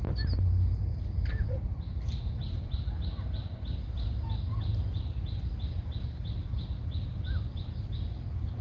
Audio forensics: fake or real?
real